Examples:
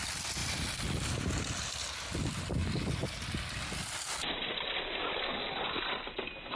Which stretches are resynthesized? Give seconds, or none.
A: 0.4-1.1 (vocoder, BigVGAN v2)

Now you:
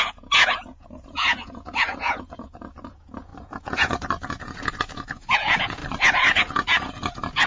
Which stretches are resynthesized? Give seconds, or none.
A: 0.0-5.8 (vocoder, Vocos); 6.4-7.5